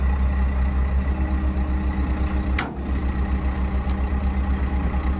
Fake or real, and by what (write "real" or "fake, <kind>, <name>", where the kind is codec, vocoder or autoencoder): real